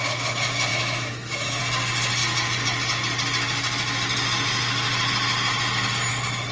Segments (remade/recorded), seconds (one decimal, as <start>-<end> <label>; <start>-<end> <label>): 0.0-0.7 recorded; 0.7-1.6 remade; 1.6-6.5 recorded